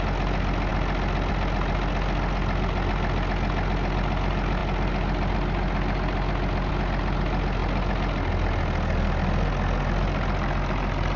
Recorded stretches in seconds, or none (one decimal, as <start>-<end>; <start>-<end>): 0.0-11.2